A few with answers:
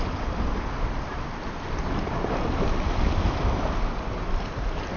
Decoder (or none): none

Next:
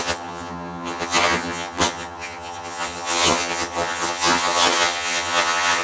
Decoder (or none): vocoder, HiFi-GAN